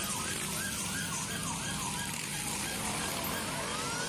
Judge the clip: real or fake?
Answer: real